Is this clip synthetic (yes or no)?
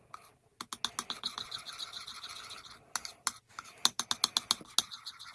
no